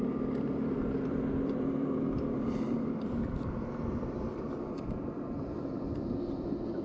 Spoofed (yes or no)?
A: yes